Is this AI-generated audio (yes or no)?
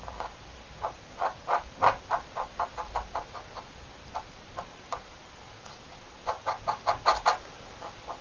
no